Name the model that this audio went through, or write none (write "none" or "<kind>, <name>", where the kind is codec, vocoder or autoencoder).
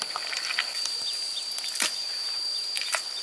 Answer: none